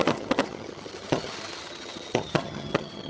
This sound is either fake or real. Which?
fake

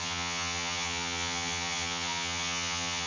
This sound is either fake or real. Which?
fake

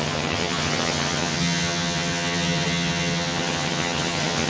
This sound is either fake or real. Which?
fake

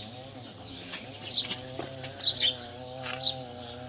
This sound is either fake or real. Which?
real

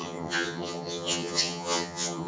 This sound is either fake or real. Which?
fake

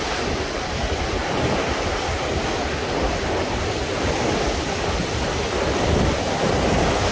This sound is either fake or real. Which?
real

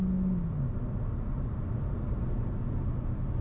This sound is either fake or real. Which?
real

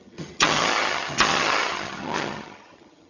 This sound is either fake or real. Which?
fake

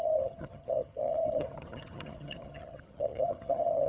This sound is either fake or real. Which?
fake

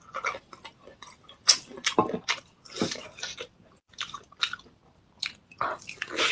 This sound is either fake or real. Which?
real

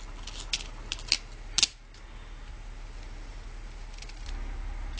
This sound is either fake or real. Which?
real